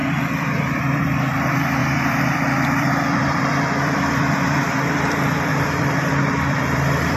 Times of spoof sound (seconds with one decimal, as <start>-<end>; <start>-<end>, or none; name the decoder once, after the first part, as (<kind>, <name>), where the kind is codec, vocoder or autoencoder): 0.0-7.2 (vocoder, BigVGAN v2)